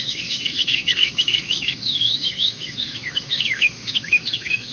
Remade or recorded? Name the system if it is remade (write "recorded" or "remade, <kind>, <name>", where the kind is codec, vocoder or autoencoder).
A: remade, autoencoder, DAC-VAE